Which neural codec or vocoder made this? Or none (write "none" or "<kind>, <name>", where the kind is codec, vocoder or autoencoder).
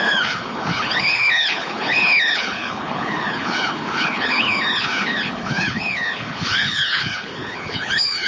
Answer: codec, HILCodec